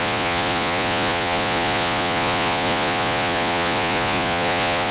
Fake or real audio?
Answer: fake